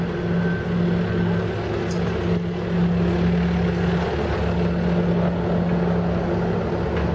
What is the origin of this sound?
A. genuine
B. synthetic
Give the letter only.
A